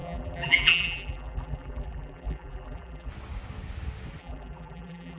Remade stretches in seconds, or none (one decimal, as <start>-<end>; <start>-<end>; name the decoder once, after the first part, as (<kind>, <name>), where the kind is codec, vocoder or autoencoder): 0.0-3.1 (vocoder, BigVGAN v2); 4.2-5.2